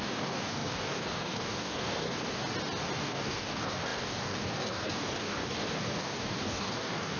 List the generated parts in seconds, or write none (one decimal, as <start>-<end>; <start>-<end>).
0.0-2.4; 3.0-7.2